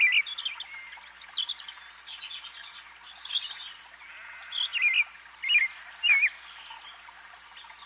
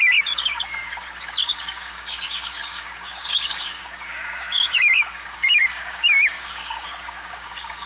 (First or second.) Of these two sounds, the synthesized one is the second